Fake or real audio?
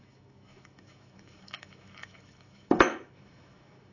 fake